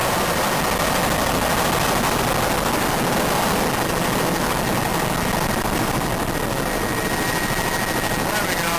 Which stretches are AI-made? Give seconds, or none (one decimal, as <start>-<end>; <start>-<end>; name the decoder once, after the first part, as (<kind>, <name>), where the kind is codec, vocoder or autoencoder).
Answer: 0.0-0.6 (vocoder, BigVGAN v2)